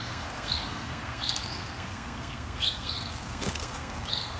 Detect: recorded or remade remade